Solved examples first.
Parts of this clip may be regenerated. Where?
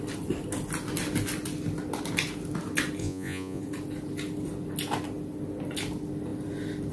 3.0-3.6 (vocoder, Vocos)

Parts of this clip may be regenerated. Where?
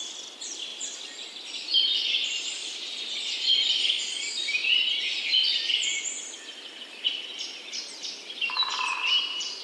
0.0-9.6 (vocoder, BigVGAN v2)